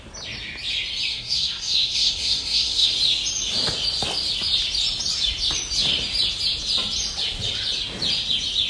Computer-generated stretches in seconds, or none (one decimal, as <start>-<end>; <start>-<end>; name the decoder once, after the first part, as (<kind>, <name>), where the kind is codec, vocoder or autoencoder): 1.1-2.9 (codec, SNAC)

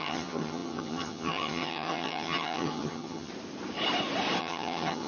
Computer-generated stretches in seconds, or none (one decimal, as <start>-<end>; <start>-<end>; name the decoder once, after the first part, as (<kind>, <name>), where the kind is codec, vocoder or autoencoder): 0.0-3.3 (vocoder, HiFi-GAN); 4.4-5.1

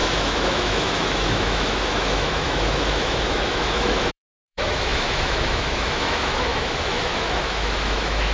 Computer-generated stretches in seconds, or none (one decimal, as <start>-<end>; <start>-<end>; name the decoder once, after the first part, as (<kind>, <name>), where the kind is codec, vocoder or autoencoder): 0.0-8.3 (autoencoder, DAC-VAE)

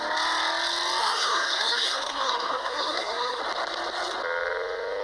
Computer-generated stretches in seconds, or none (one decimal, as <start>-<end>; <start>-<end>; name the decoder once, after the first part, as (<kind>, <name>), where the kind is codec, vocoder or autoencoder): 1.0-3.4 (codec, SNAC)

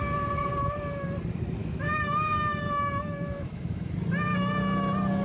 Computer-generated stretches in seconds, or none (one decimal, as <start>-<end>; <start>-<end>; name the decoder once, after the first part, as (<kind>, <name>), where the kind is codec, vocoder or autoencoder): 1.6-3.9 (autoencoder, DAC-VAE)